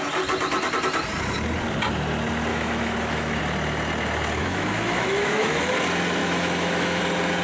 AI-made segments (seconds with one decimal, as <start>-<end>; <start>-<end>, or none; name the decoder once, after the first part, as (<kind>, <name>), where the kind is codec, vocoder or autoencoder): 2.5-3.4 (autoencoder, DAC-VAE); 4.4-5.7; 6.2-7.0